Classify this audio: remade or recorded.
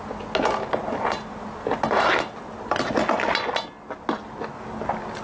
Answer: recorded